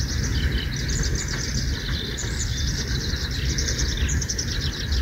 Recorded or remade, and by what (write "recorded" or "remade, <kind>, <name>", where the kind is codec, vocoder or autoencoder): recorded